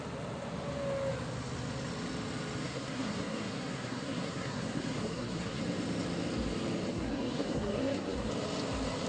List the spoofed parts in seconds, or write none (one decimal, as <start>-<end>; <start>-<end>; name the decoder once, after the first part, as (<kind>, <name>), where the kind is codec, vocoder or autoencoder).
2.6-5.6 (codec, SNAC); 6.9-8.3